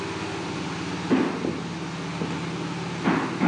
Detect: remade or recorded recorded